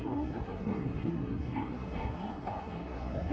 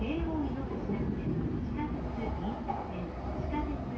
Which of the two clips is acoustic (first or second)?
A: second